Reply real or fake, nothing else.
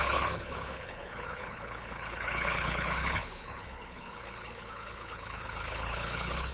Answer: fake